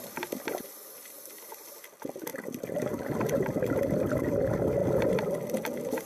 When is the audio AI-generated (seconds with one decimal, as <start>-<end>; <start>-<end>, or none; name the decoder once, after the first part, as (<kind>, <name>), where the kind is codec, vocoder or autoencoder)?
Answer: none

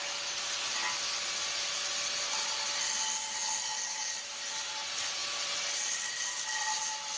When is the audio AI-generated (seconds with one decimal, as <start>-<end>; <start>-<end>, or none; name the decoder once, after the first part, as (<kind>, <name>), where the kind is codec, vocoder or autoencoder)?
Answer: 4.0-4.7 (vocoder, BigVGAN v2); 5.2-6.8

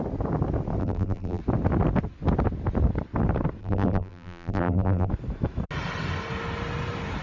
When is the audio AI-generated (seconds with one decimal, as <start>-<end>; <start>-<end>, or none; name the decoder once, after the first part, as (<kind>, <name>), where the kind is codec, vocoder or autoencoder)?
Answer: 0.8-1.4 (vocoder, BigVGAN v2); 3.6-5.1

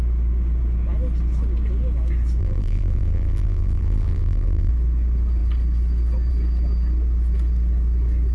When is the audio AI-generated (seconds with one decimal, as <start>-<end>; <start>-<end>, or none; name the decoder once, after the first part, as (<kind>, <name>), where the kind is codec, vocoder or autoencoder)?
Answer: 2.4-4.7 (vocoder, BigVGAN v2)

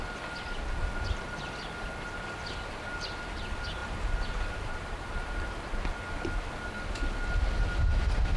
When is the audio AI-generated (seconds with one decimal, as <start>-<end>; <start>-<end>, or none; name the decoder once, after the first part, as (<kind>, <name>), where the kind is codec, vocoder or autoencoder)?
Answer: 3.8-5.9 (vocoder, BigVGAN v2)

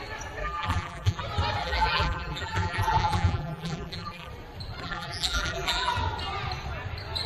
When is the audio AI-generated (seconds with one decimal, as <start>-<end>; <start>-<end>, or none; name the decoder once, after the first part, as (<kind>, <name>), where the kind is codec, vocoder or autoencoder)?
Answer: 0.4-1.2 (vocoder, BigVGAN v2); 1.6-4.3; 4.8-5.9

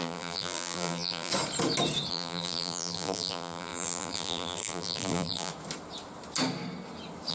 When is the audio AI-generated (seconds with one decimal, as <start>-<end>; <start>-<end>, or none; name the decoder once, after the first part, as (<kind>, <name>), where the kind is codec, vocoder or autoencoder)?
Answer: 0.0-1.3 (vocoder, BigVGAN v2); 2.1-5.5